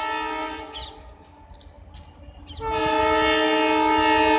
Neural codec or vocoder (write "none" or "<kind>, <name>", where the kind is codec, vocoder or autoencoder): none